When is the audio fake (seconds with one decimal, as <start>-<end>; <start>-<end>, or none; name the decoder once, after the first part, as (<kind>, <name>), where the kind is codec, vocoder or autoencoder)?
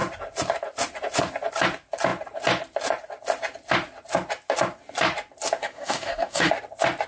5.6-6.5 (codec, DAC)